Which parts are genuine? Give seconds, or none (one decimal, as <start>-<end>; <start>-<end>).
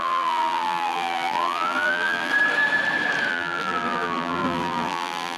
2.3-3.3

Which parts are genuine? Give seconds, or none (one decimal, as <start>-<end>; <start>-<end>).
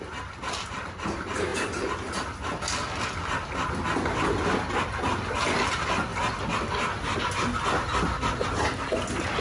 0.0-9.4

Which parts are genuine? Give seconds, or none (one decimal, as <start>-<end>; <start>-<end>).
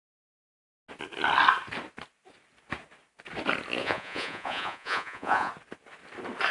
0.0-3.8; 5.5-6.5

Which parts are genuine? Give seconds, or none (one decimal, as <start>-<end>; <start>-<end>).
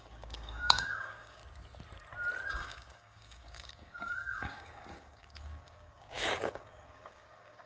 1.4-2.5